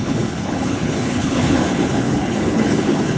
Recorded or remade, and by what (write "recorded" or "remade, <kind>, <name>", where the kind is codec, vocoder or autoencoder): remade, codec, HILCodec